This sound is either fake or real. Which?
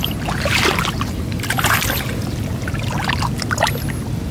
real